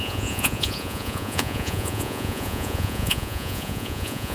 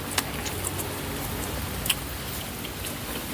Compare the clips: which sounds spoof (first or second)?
first